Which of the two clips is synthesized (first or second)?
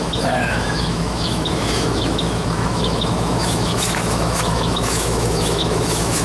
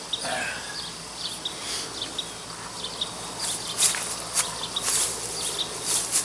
first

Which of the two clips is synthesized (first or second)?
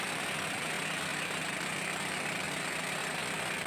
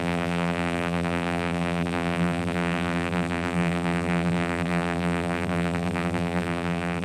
second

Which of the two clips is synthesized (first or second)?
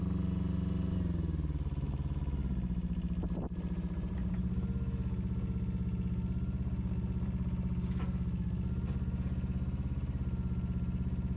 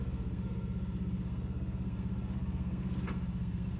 second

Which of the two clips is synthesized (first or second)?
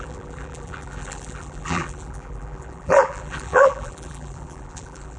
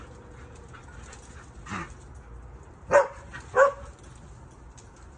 first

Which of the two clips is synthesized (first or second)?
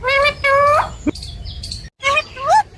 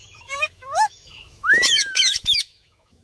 second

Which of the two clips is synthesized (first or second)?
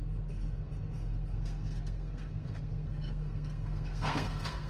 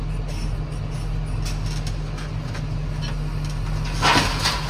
first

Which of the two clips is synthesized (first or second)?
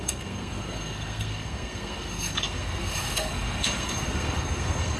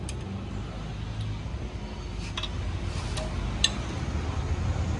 first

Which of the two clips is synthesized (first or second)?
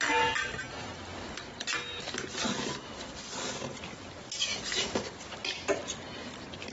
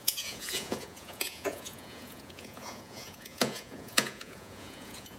second